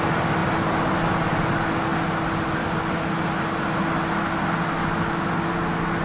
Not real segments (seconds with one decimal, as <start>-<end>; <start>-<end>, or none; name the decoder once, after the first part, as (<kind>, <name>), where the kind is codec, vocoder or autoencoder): none